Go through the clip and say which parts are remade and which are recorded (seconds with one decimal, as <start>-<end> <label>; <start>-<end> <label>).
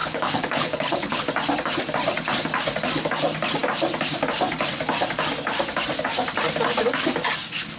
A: 0.0-1.2 remade; 1.2-7.8 recorded